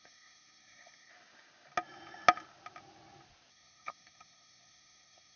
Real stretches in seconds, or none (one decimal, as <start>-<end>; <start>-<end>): 1.1-3.5